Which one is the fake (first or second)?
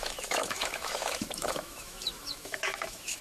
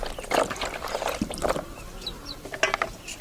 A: first